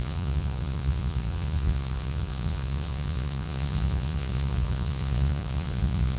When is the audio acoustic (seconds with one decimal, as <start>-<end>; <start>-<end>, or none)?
none